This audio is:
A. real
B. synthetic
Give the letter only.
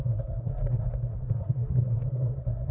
B